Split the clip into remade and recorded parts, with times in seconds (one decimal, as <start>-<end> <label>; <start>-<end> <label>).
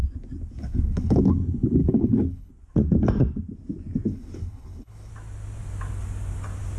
0.0-0.6 recorded; 0.6-1.2 remade; 1.2-1.8 recorded; 1.8-2.5 remade; 2.5-4.1 recorded; 4.1-5.1 remade; 5.1-6.8 recorded